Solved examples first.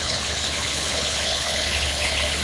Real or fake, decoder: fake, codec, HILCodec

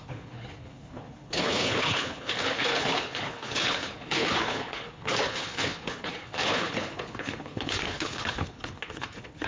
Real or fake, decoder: fake, codec, HILCodec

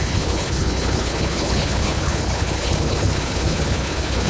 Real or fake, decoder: fake, codec, HILCodec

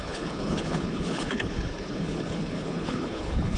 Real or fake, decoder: fake, codec, HILCodec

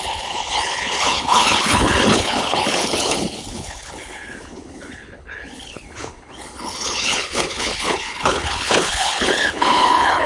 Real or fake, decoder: fake, codec, HILCodec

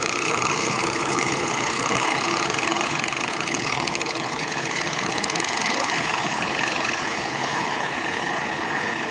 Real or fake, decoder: fake, codec, HILCodec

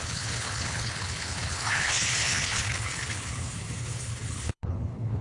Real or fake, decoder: fake, codec, HILCodec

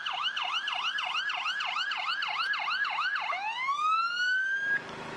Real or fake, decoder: real